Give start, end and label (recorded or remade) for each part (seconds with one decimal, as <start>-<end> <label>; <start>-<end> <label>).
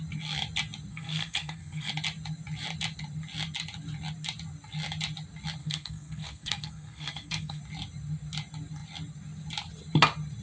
0.0-0.9 recorded; 0.9-1.9 remade; 1.9-5.6 recorded; 5.6-7.6 remade; 7.6-10.4 recorded